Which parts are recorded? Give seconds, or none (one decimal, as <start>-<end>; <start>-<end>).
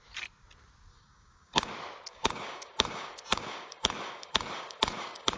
0.0-0.9; 1.7-2.1